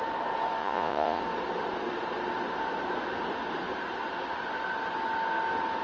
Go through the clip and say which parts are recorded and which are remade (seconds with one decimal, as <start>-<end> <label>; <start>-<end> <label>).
0.0-0.6 recorded; 0.6-1.2 remade; 1.2-5.8 recorded